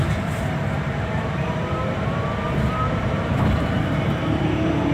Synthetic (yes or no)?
yes